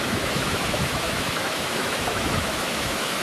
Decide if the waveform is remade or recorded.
remade